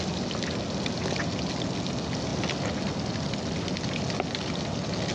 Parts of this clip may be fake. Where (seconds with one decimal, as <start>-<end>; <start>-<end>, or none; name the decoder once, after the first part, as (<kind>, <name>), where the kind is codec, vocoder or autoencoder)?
none